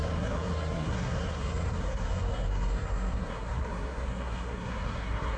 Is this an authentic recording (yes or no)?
no